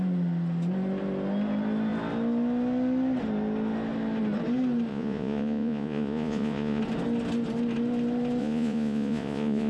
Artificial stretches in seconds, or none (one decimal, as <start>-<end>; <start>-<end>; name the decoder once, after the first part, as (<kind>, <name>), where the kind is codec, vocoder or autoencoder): 4.9-6.8 (vocoder, Vocos); 8.4-9.7